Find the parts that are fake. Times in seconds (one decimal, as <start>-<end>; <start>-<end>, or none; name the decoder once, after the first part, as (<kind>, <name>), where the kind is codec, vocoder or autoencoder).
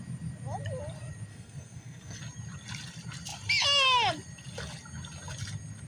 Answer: 1.3-2.2 (codec, SNAC)